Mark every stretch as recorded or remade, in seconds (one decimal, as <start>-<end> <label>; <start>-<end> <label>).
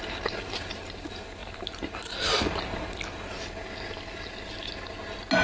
0.0-5.4 recorded